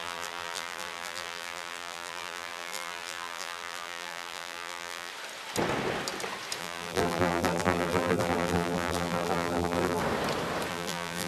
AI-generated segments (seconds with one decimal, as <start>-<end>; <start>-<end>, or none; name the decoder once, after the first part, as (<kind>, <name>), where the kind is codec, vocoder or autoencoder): 0.0-5.1 (vocoder, BigVGAN v2); 6.6-10.0; 10.7-11.3